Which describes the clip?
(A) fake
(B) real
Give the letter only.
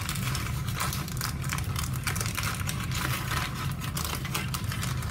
B